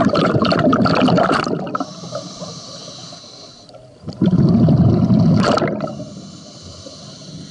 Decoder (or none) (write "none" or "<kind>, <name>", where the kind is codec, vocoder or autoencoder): none